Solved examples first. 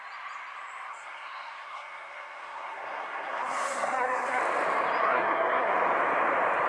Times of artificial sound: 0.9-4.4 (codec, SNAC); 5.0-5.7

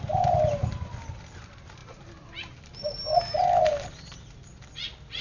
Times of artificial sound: none

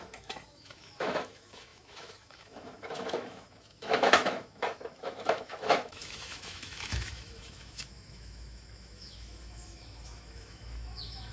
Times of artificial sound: 0.0-11.3 (autoencoder, DAC-VAE)

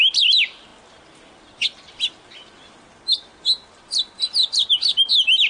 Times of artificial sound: none

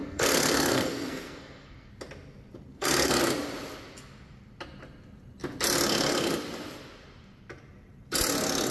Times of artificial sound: 0.0-1.9 (codec, SNAC); 2.7-3.2

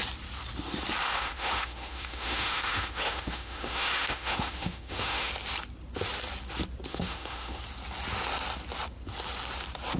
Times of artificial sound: 1.0-5.3 (autoencoder, DAC-VAE); 6.9-7.6